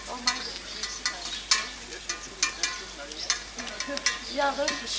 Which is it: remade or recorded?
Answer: recorded